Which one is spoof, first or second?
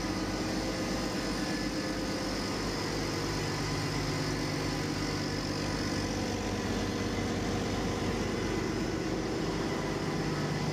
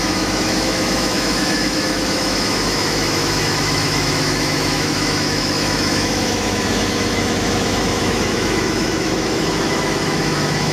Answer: second